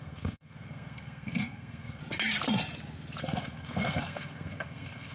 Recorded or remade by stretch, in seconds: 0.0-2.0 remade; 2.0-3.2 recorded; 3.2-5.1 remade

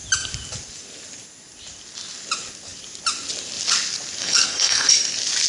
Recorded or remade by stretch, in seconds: 0.0-4.2 recorded; 4.2-4.9 remade; 4.9-5.5 recorded

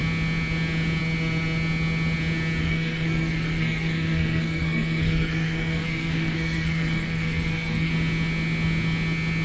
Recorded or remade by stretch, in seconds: 0.0-2.6 recorded; 2.6-7.9 remade; 7.9-9.4 recorded

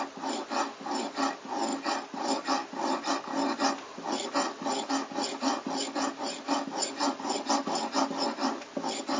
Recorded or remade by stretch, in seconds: 0.0-9.2 recorded

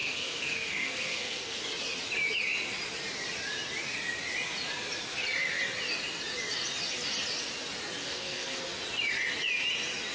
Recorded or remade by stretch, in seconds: 0.0-1.6 remade; 1.6-8.0 recorded; 8.0-8.6 remade; 8.6-10.1 recorded

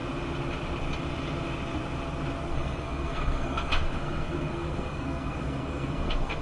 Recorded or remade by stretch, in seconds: 0.0-2.5 recorded; 2.5-6.4 remade

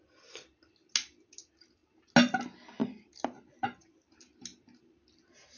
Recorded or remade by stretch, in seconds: 0.0-5.6 recorded